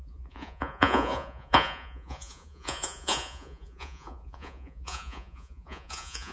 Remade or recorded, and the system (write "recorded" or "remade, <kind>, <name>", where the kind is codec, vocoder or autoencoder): remade, vocoder, Vocos